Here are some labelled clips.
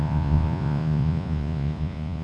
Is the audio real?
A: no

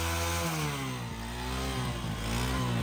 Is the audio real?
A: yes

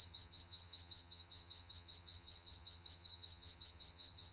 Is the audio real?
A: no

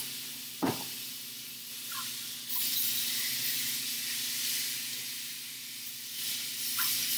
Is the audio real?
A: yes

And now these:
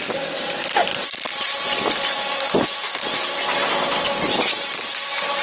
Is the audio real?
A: yes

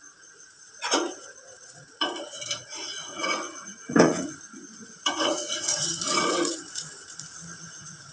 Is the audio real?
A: no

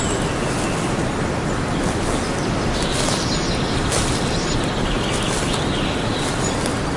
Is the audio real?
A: yes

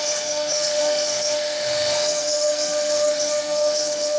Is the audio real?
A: no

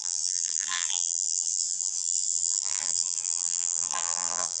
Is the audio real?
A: no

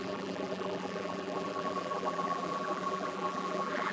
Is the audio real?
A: no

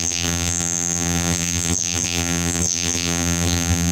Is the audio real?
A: no